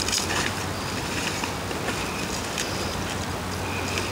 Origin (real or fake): real